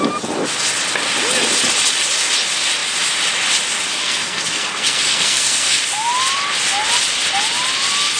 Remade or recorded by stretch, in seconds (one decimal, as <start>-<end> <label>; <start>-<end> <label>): 0.0-4.0 recorded; 4.0-5.8 remade; 5.8-8.2 recorded